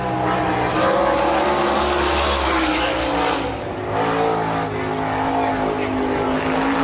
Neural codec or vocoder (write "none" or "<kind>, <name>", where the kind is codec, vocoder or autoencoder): none